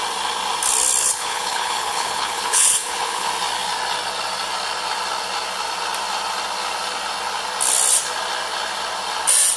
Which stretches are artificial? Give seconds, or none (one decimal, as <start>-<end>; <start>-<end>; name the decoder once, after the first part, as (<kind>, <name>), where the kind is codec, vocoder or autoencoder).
1.0-3.3 (codec, HILCodec)